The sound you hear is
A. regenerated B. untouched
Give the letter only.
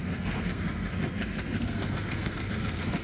A